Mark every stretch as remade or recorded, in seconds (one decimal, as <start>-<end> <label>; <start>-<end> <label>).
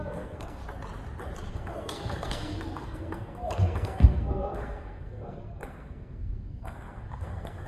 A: 0.0-0.6 remade; 0.6-1.5 recorded; 1.5-7.7 remade